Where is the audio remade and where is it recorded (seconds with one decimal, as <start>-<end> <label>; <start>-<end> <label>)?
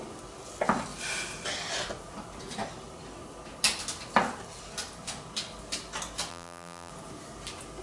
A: 0.0-6.3 recorded; 6.3-6.9 remade; 6.9-7.8 recorded